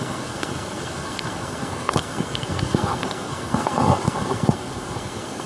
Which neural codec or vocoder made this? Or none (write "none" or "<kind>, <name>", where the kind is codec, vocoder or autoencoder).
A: codec, SNAC